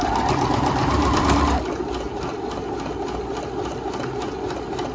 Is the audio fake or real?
fake